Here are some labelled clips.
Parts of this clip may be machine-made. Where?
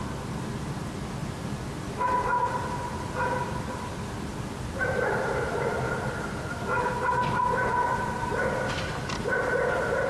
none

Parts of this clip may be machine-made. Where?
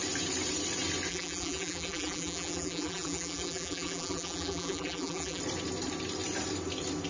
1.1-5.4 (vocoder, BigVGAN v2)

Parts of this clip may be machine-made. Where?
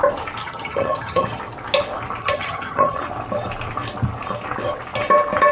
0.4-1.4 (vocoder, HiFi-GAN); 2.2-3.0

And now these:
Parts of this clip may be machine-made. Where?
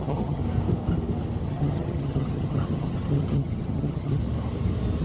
0.0-0.4 (vocoder, HiFi-GAN); 1.4-4.2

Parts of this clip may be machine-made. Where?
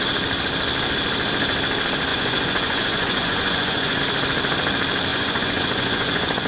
2.1-4.0 (vocoder, Vocos); 5.1-6.5